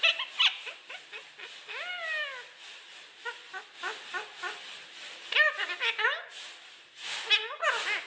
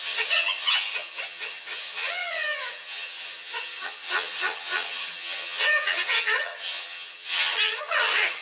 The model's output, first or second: second